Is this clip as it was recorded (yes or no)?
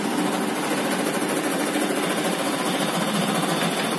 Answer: yes